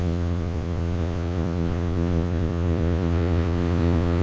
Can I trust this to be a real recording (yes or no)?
no